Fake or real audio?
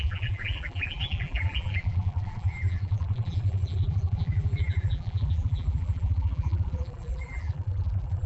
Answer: fake